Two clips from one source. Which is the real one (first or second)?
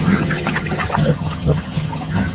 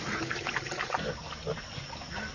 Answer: second